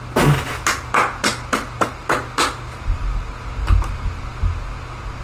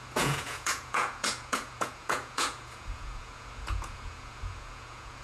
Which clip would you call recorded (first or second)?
first